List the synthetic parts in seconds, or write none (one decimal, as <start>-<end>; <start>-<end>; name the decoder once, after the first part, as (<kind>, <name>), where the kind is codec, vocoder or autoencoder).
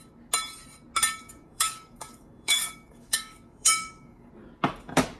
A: 1.2-4.3 (codec, DAC)